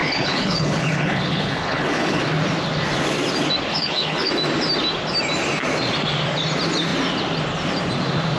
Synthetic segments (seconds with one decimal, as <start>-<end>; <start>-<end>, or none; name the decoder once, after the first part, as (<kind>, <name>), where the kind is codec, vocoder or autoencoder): 0.0-2.2 (codec, HILCodec); 3.7-4.3